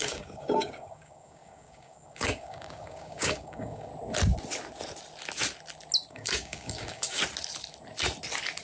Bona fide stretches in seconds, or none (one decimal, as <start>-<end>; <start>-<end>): 3.9-6.1; 7.2-8.6